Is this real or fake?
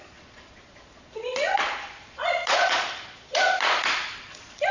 fake